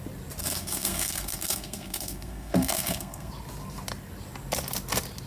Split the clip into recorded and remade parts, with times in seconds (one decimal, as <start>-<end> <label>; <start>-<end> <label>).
0.0-0.4 recorded; 0.4-3.3 remade; 3.3-5.3 recorded